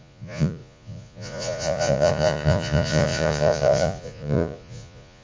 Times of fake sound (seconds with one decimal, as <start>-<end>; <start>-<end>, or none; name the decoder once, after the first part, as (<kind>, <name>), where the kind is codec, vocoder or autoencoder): 0.0-5.2 (vocoder, Vocos)